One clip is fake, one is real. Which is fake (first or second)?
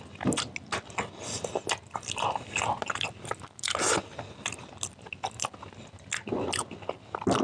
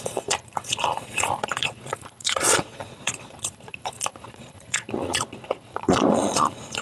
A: second